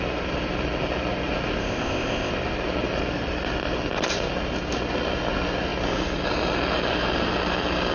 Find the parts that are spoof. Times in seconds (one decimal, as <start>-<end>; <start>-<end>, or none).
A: 1.6-2.3